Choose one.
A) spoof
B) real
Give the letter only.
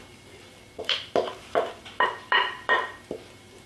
A